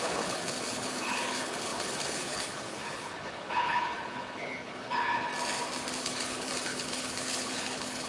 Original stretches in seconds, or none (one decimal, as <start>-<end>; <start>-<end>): 5.3-6.0